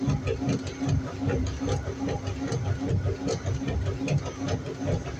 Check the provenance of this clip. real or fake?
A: real